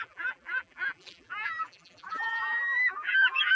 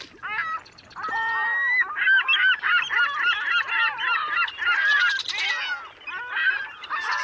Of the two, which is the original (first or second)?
second